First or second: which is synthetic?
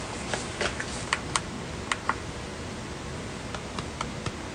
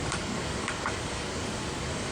second